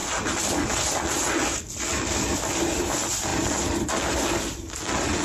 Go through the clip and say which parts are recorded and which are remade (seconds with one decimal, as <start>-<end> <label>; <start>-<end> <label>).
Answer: 0.0-5.2 recorded